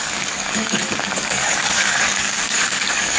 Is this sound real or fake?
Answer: fake